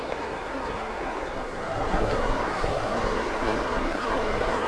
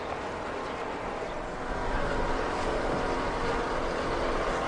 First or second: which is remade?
first